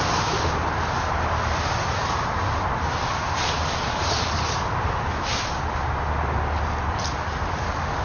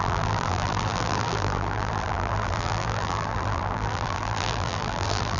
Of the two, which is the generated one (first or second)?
second